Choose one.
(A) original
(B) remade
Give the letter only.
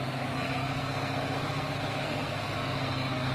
B